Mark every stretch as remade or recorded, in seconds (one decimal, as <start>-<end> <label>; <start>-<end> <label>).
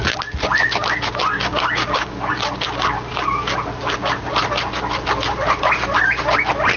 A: 0.0-1.3 recorded; 1.3-2.4 remade; 2.4-6.8 recorded